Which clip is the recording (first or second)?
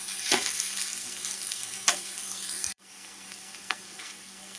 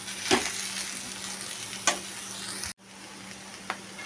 second